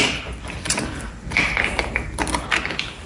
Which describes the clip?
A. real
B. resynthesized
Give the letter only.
B